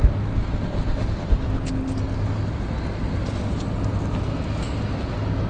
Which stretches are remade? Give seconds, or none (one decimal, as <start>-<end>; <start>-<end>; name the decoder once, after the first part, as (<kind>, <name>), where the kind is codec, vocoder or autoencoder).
none